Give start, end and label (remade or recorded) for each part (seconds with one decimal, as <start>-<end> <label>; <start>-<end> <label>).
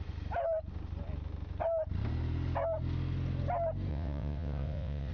0.0-3.9 recorded; 3.9-5.1 remade